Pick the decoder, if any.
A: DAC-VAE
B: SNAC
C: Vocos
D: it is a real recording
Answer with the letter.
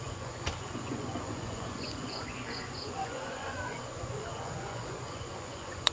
C